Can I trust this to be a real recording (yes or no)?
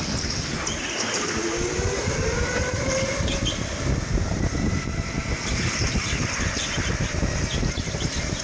yes